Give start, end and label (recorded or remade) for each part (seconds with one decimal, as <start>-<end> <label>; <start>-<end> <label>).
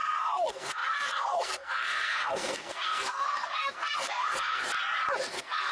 0.0-4.7 remade; 4.7-5.3 recorded; 5.3-5.7 remade